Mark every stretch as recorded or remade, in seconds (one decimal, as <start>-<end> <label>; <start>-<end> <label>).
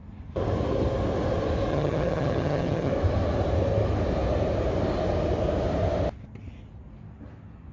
0.0-1.7 recorded; 1.7-2.9 remade; 2.9-7.7 recorded